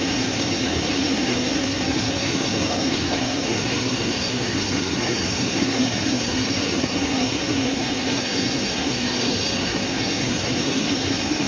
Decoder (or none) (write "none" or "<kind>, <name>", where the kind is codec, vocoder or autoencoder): codec, SNAC